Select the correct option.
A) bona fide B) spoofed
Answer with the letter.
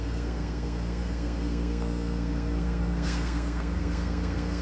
B